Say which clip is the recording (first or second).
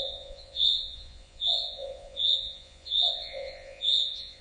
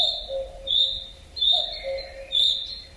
second